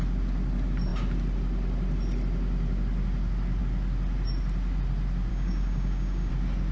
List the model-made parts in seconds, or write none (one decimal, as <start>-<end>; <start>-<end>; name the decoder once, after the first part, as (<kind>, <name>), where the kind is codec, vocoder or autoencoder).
5.3-6.3 (codec, DAC)